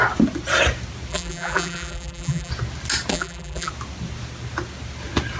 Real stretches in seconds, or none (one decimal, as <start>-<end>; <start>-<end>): 0.0-1.1; 2.5-3.1; 3.7-5.4